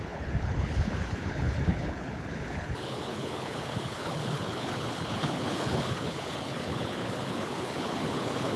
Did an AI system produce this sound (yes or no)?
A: yes